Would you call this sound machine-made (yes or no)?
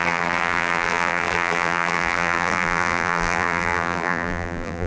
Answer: yes